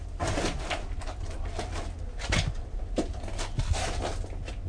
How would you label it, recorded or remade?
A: recorded